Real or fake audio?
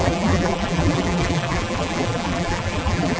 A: fake